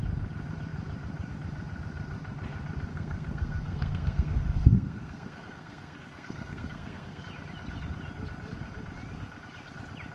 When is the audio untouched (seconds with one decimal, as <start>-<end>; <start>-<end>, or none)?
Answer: 0.0-2.9; 7.2-10.1